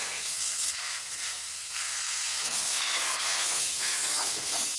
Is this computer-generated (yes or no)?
yes